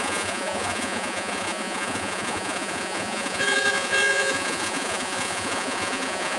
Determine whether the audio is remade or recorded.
remade